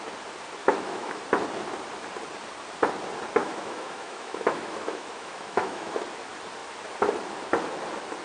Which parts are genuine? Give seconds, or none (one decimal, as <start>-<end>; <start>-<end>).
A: 0.0-0.6; 1.2-3.4; 6.0-8.2

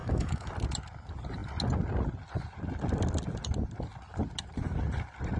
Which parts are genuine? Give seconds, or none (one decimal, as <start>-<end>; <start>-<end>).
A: 0.5-5.4

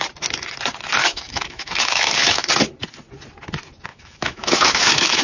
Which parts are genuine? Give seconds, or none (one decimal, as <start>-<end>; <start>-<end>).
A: 0.0-1.0; 2.5-3.9

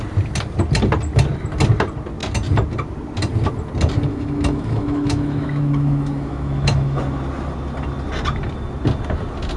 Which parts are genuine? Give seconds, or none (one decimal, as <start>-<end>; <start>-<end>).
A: 0.0-4.1; 7.0-9.6

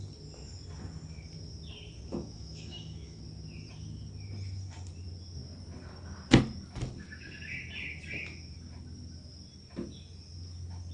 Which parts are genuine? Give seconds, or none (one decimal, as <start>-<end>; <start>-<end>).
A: 0.0-2.1; 3.2-10.9

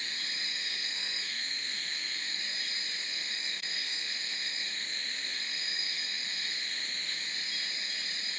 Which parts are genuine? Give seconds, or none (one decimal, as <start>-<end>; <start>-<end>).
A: 0.0-0.5; 2.4-3.0; 7.2-8.4

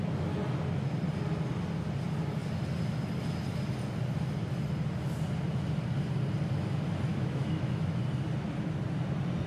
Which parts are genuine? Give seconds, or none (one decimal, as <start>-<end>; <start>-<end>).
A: 0.0-7.1; 8.0-9.5